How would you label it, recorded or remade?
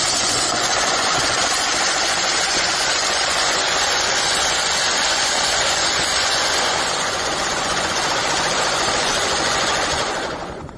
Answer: remade